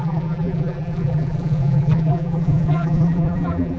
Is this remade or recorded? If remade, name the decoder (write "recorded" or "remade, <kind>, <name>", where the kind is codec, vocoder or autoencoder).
remade, vocoder, BigVGAN v2